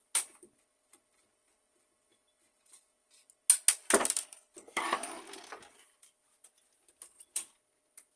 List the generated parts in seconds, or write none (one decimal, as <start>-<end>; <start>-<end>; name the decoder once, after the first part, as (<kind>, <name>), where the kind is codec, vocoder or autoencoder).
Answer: none